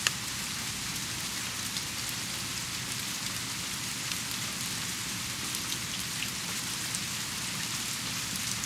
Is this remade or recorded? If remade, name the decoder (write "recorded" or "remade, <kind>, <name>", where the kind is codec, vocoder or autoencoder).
recorded